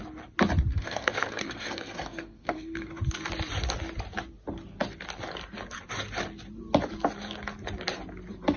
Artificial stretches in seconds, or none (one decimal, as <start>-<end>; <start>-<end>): 0.7-2.9